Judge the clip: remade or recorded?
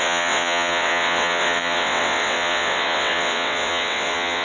remade